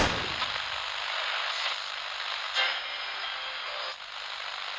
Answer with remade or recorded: recorded